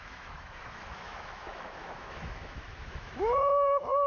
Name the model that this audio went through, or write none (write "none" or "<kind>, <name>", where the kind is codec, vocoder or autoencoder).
autoencoder, DAC-VAE